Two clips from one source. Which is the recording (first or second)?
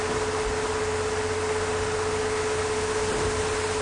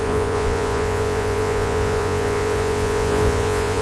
first